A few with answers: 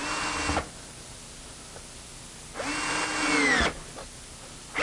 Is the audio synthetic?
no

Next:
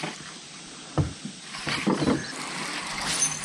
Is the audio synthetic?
no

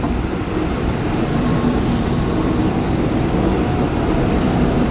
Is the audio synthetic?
yes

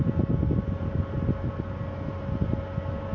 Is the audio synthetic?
no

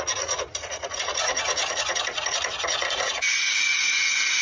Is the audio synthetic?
yes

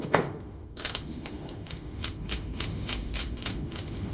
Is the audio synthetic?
yes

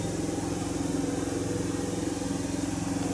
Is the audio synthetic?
no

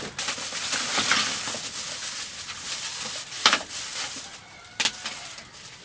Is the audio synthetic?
no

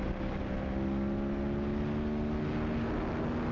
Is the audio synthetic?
no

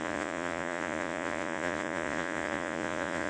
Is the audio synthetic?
yes